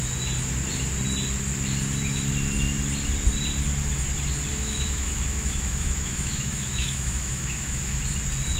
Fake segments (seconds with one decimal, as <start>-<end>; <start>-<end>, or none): 4.5-8.0